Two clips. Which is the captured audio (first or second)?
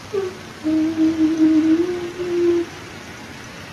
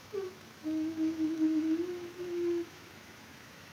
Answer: first